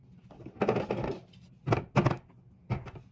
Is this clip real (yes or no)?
yes